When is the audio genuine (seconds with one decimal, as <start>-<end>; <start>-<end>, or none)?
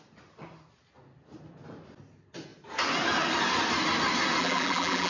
0.0-4.4